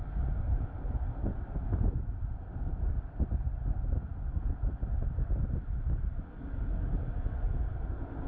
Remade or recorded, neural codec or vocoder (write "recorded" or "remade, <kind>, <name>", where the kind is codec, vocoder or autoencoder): recorded